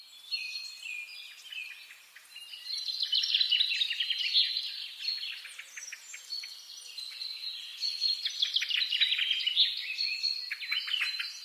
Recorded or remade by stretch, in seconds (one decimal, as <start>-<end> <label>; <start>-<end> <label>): 0.0-11.4 recorded